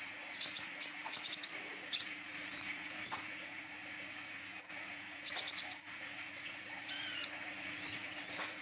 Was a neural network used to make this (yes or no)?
yes